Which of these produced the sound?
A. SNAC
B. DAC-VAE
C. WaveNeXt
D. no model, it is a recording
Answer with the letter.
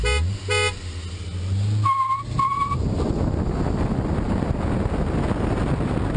D